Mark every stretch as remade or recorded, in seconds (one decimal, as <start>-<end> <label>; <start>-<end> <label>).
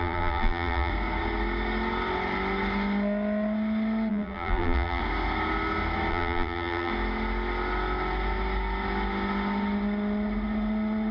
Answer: 0.0-0.9 remade; 0.9-4.1 recorded; 4.1-5.0 remade; 5.0-6.1 recorded; 6.1-6.9 remade; 6.9-11.1 recorded